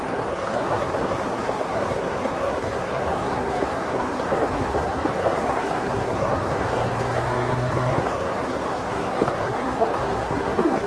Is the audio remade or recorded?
remade